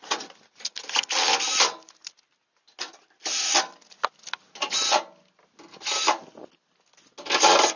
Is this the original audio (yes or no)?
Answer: yes